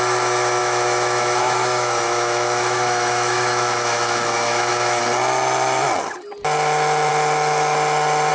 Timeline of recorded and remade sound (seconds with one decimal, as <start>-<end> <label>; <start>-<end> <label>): 0.0-0.6 recorded; 0.6-5.0 remade; 5.0-8.3 recorded